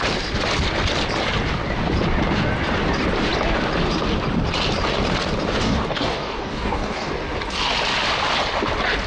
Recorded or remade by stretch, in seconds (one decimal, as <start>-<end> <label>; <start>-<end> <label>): 0.0-5.6 recorded; 5.6-7.1 remade; 7.1-9.1 recorded